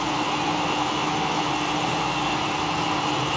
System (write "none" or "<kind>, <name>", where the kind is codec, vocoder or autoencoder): none